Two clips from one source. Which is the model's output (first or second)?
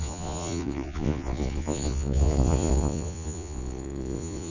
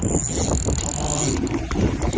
first